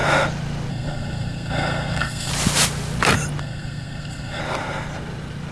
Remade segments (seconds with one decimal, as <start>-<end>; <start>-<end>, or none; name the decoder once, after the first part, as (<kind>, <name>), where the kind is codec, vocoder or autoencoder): 0.7-2.3 (codec, SNAC); 3.4-4.4